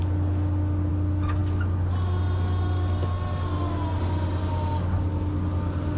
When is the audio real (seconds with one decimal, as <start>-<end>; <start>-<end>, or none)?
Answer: 0.0-6.0